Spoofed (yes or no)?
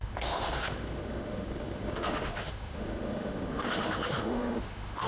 yes